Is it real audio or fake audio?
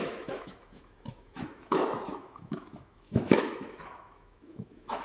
fake